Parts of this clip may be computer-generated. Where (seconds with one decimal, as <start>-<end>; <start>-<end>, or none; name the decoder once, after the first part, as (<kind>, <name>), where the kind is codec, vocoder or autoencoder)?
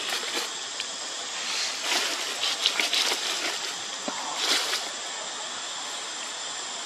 4.3-5.6 (vocoder, BigVGAN v2)